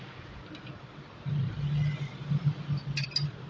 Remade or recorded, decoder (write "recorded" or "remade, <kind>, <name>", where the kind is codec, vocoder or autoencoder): recorded